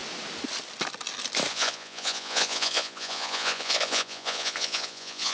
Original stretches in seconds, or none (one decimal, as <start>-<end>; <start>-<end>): 0.0-1.5